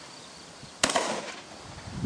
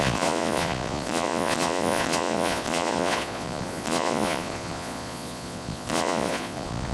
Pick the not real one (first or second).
second